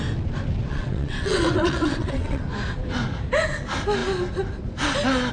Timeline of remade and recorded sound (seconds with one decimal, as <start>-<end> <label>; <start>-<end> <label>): 0.0-0.7 recorded; 0.7-2.4 remade; 2.4-5.3 recorded

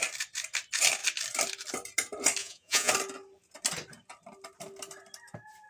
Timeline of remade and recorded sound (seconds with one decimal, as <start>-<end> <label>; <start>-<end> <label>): 0.0-2.4 recorded; 2.4-2.9 remade; 2.9-5.7 recorded

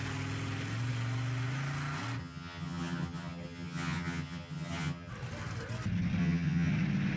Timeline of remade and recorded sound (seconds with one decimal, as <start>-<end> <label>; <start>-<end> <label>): 0.0-2.2 recorded; 2.2-5.1 remade; 5.1-6.2 recorded; 6.2-6.7 remade; 6.7-7.2 recorded

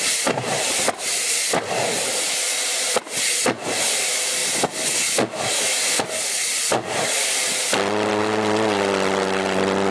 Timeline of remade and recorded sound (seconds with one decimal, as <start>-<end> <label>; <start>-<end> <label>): 0.0-9.9 recorded

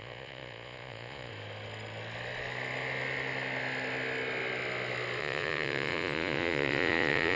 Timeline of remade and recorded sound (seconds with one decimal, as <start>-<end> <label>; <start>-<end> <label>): 0.0-1.3 remade; 1.3-5.2 recorded; 5.2-7.4 remade